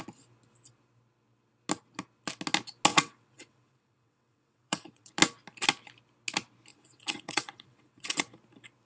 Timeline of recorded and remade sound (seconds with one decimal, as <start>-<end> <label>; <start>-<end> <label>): 0.0-2.9 recorded; 2.9-5.1 remade; 5.1-6.7 recorded; 6.7-8.2 remade; 8.2-8.9 recorded